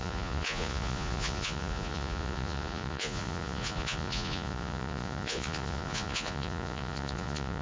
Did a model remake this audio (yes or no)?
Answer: yes